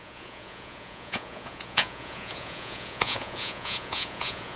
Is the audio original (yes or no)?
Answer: no